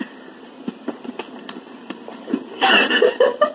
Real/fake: fake